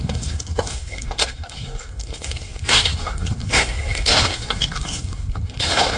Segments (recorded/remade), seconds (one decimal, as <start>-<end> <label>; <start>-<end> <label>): 0.0-6.0 remade